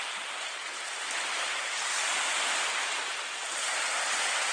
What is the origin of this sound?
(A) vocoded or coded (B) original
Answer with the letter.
B